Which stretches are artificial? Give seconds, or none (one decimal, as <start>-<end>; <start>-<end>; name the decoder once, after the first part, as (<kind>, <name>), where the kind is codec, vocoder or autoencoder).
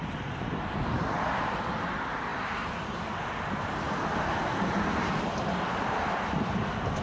none